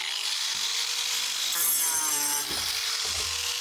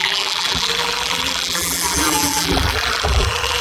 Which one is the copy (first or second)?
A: second